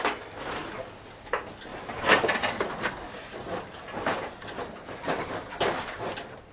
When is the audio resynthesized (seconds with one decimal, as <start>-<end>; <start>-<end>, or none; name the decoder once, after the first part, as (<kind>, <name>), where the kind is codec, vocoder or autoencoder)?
1.7-2.6 (vocoder, BigVGAN v2); 3.2-5.5